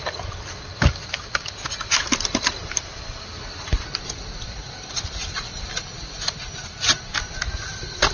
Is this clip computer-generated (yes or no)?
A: no